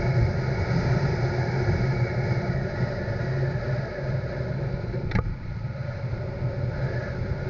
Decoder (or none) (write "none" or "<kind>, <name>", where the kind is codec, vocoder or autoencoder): none